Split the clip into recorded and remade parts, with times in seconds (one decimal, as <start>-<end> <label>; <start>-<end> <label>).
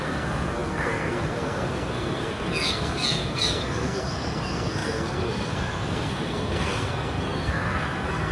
0.0-8.3 remade